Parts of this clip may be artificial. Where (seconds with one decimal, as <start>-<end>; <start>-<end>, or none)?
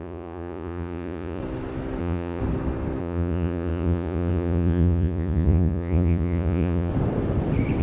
0.0-1.4; 2.0-2.4; 3.0-6.9